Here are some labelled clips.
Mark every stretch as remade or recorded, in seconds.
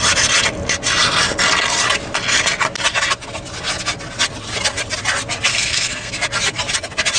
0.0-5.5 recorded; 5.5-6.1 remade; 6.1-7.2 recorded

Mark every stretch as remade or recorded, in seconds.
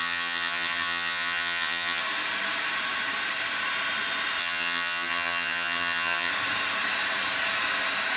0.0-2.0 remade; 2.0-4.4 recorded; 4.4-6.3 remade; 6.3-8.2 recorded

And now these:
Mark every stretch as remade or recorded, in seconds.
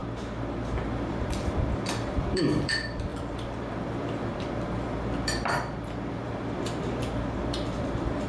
0.0-1.1 recorded; 1.1-8.3 remade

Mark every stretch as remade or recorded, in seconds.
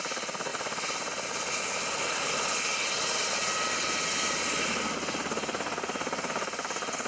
0.0-7.1 recorded